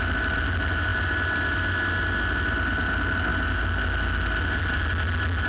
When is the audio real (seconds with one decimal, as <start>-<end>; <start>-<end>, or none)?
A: 0.0-5.5